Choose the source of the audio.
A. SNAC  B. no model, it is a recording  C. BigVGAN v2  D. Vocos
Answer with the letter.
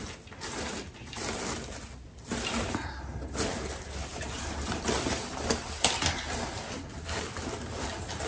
B